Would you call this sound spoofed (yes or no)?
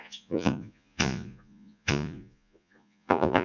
yes